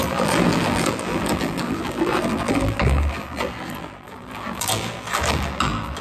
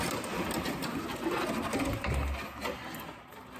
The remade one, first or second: first